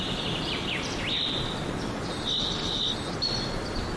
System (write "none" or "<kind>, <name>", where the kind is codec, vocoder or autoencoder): none